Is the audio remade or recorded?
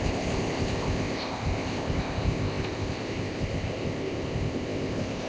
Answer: remade